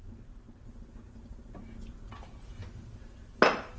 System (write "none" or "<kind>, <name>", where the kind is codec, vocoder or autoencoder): none